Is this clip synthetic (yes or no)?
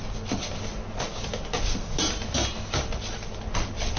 no